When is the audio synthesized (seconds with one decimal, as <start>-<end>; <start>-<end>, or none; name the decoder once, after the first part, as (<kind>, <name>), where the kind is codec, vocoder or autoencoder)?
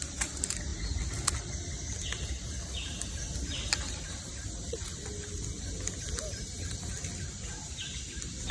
none